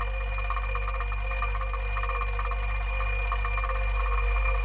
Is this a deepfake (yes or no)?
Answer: no